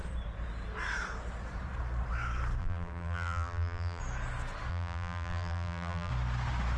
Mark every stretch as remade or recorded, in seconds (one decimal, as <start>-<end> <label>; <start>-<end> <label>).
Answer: 0.0-2.6 recorded; 2.6-4.0 remade; 4.0-4.7 recorded; 4.7-6.1 remade; 6.1-6.8 recorded